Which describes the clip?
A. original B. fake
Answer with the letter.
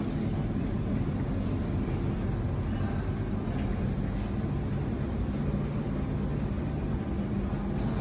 A